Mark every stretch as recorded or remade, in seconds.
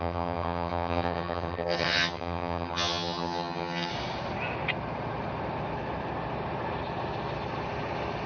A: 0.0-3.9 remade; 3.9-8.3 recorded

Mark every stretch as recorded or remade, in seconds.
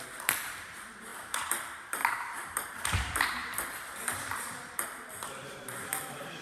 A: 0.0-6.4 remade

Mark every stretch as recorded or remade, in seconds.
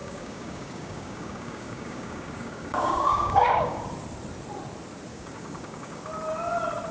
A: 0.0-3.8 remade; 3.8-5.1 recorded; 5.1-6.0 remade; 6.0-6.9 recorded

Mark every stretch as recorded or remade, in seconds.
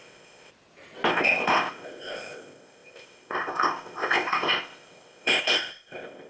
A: 0.0-0.5 remade; 0.5-1.1 recorded; 1.1-6.3 remade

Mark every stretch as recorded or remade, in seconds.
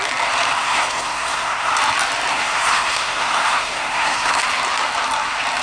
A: 0.0-0.6 recorded; 0.6-1.7 remade; 1.7-2.3 recorded; 2.3-4.4 remade; 4.4-5.6 recorded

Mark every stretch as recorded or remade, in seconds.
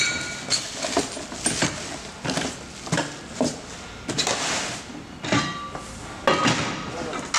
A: 0.0-7.4 recorded